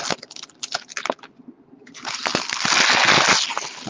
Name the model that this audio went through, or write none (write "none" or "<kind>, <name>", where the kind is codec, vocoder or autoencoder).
none